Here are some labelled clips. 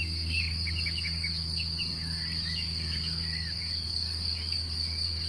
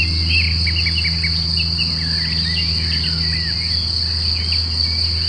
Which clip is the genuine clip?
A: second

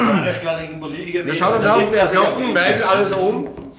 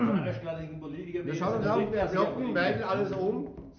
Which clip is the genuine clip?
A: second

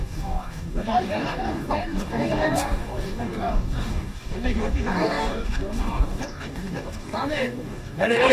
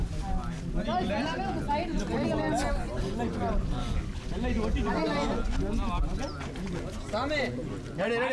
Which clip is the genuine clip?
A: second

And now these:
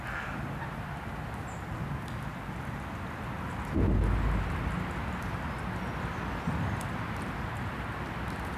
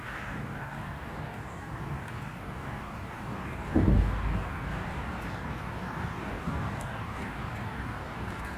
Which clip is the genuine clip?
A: first